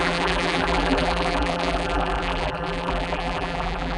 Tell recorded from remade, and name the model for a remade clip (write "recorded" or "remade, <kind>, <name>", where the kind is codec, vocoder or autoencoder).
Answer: remade, vocoder, BigVGAN v2